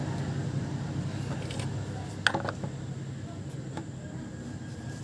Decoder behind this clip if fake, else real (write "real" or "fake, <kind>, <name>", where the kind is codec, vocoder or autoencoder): real